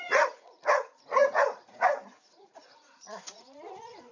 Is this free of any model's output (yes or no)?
no